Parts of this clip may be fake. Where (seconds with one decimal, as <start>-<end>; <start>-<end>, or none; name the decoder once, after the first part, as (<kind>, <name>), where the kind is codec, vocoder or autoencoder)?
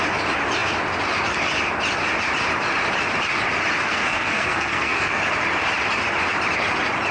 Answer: 3.8-5.2 (codec, SNAC)